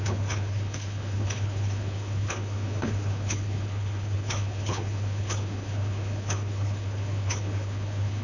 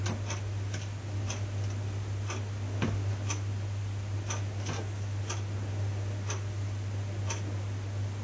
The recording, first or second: second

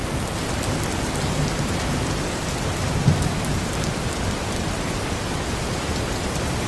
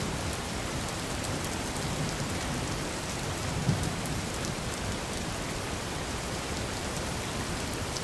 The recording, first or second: first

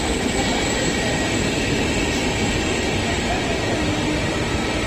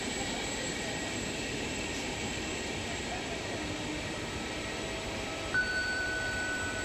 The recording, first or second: first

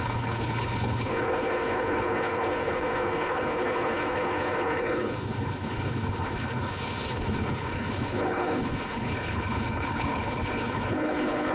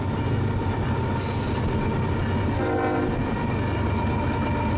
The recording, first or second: second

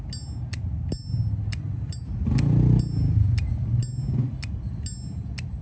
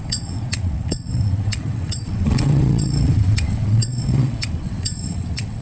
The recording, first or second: first